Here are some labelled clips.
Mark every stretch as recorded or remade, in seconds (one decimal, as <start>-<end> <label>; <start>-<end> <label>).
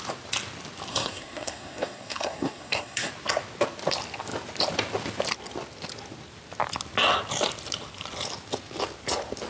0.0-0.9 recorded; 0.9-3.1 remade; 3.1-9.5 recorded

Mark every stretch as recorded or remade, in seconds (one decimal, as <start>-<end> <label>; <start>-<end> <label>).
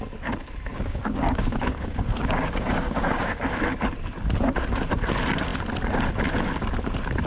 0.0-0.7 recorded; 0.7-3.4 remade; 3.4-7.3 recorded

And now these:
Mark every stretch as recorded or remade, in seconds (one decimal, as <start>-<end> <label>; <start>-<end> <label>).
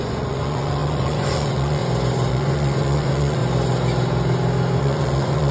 0.0-1.8 remade; 1.8-2.3 recorded; 2.3-3.4 remade; 3.4-4.8 recorded; 4.8-5.5 remade